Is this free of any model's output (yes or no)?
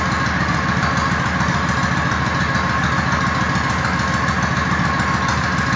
yes